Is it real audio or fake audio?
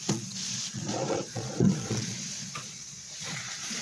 fake